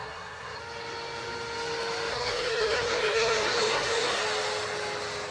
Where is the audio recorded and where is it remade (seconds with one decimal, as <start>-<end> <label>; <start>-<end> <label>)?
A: 0.0-0.6 remade; 0.6-2.1 recorded; 2.1-4.2 remade; 4.2-5.3 recorded